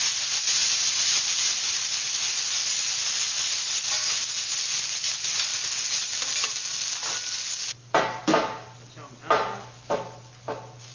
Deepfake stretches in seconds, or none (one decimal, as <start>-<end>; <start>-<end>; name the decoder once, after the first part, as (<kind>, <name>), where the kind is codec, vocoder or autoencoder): 0.6-2.1 (vocoder, BigVGAN v2)